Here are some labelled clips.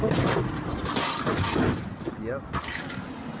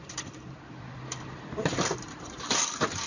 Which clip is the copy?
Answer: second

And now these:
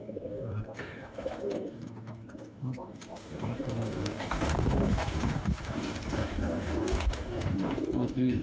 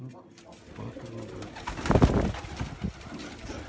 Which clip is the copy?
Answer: first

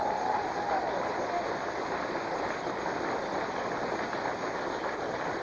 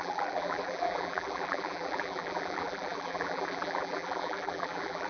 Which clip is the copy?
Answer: second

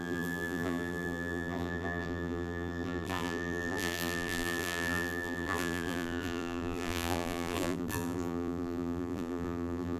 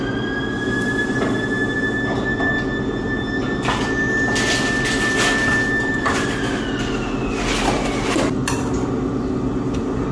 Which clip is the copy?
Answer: first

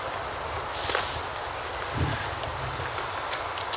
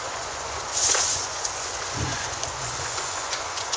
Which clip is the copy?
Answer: second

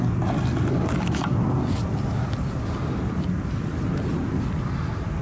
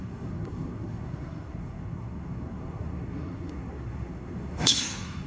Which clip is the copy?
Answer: second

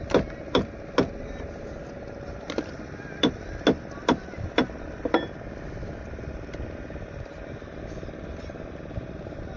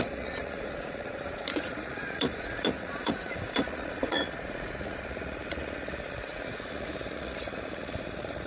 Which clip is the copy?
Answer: second